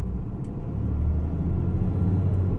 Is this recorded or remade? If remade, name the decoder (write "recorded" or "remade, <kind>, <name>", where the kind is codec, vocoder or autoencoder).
recorded